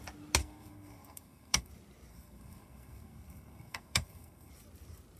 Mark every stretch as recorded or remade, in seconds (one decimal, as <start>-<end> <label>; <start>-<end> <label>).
0.0-0.4 recorded; 0.4-1.7 remade; 1.7-2.1 recorded; 2.1-4.5 remade; 4.5-5.2 recorded